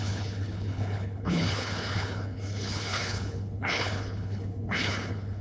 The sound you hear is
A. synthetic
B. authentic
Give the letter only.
A